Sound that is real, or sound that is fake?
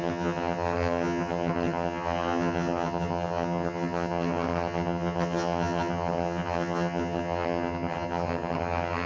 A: fake